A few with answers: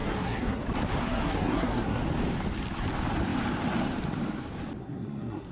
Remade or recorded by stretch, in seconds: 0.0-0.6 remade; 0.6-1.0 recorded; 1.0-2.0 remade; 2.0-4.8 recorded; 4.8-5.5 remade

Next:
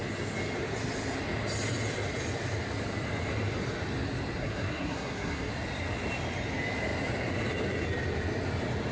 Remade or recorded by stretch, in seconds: 0.0-4.4 recorded; 4.4-5.5 remade; 5.5-8.9 recorded

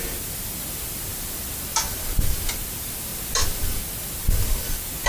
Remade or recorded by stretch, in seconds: 0.0-5.1 recorded

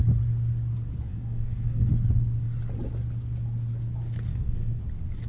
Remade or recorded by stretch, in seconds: 0.0-1.1 recorded; 1.1-1.9 remade; 1.9-4.3 recorded; 4.3-4.8 remade; 4.8-5.3 recorded

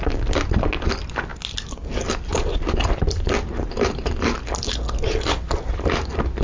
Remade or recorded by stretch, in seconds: 0.0-6.4 recorded

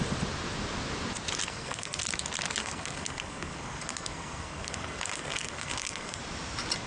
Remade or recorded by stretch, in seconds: 0.0-1.4 recorded; 1.4-2.0 remade; 2.0-2.6 recorded; 2.6-6.2 remade; 6.2-6.9 recorded